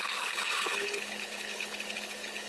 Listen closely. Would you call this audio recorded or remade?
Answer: remade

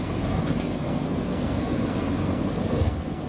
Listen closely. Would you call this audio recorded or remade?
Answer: remade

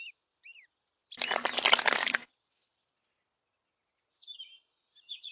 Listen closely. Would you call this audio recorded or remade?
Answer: recorded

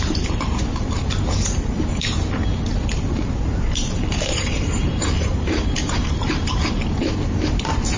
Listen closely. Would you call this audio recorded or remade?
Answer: remade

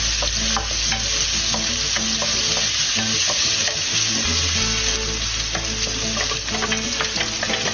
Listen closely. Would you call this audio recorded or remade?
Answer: recorded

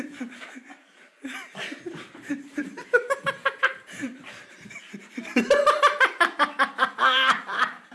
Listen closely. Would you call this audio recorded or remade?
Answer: remade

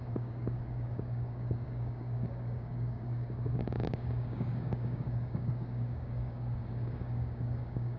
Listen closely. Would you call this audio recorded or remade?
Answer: remade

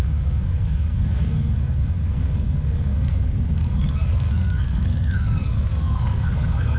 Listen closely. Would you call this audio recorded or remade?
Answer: remade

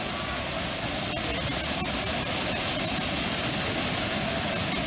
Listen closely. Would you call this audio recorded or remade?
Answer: recorded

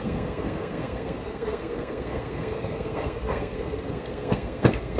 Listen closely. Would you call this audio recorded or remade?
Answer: remade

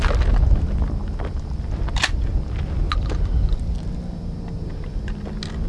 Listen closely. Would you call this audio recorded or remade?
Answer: recorded